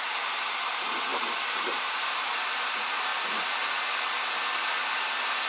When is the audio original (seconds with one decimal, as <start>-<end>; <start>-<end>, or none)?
3.1-5.5

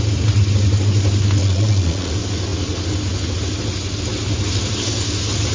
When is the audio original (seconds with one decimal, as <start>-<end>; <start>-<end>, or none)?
0.0-1.4; 2.1-5.5

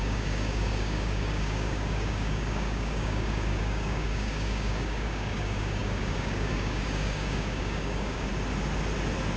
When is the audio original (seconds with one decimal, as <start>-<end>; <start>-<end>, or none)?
8.3-9.4

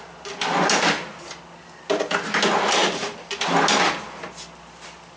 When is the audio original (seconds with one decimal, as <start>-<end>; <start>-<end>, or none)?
0.0-5.2